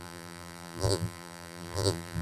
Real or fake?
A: fake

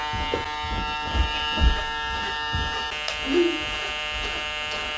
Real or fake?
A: real